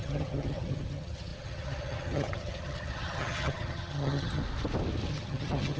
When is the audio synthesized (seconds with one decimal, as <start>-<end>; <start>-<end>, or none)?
0.0-4.4; 5.1-5.8